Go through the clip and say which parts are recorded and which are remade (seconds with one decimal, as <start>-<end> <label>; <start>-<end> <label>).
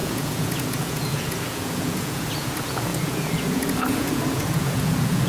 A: 0.0-5.3 remade